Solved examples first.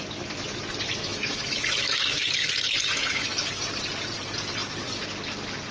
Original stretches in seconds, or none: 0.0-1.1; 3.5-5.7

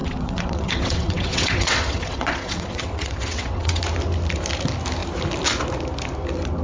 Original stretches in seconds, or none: 3.8-6.6

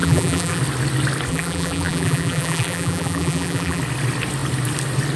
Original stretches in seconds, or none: 0.6-1.3; 3.8-5.2

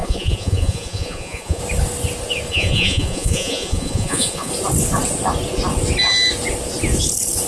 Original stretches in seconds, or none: 1.6-2.5; 4.5-7.5

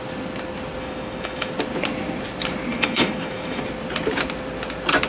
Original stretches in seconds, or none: 0.0-0.8; 1.5-2.7; 3.6-5.1

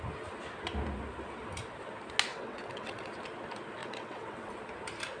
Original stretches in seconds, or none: 0.0-2.3; 3.1-3.8; 4.5-5.2

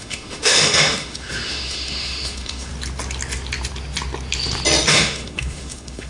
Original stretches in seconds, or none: 2.7-4.9